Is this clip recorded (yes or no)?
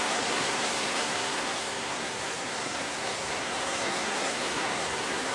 no